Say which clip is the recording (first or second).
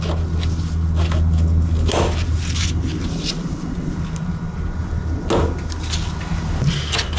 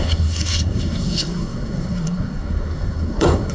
first